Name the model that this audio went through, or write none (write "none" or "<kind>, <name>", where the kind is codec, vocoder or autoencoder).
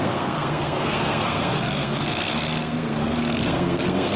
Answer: codec, SNAC